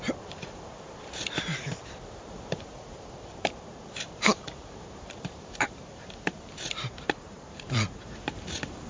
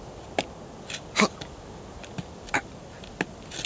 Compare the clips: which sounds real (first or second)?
second